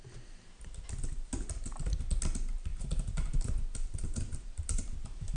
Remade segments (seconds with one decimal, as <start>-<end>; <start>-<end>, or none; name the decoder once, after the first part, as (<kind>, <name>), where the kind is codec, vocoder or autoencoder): 2.7-5.4 (vocoder, BigVGAN v2)